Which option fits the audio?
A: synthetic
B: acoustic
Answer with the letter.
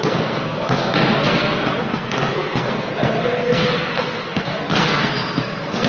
A